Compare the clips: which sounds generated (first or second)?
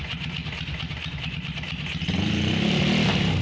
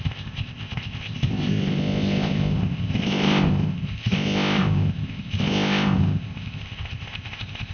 second